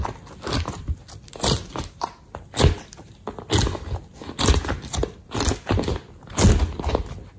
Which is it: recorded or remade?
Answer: recorded